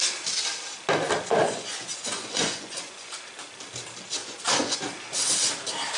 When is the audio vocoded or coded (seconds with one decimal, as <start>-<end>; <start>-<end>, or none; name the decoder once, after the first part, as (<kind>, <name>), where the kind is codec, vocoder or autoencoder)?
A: 1.4-3.1 (vocoder, Vocos); 4.2-4.8